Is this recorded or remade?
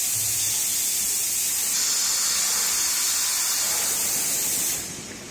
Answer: recorded